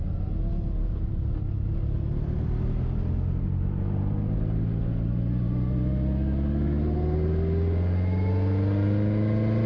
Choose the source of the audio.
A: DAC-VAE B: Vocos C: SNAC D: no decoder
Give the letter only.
D